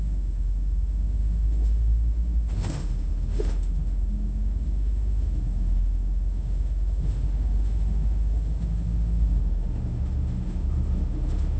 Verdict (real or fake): fake